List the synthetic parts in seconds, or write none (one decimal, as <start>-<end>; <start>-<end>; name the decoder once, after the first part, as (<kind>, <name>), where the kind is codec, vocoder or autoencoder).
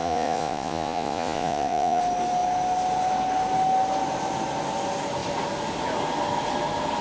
0.0-2.0 (vocoder, Vocos)